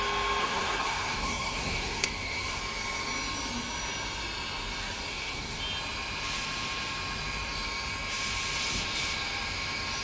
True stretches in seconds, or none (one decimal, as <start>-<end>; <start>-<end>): 0.0-0.4; 2.6-5.1; 5.6-10.0